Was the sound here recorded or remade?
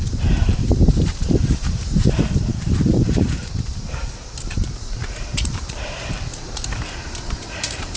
remade